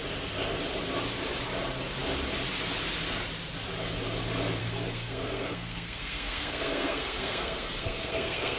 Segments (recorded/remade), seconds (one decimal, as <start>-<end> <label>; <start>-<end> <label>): 0.0-4.6 recorded; 4.6-8.6 remade